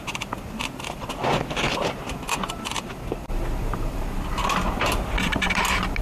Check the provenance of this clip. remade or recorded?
recorded